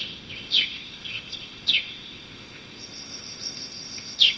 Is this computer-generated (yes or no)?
yes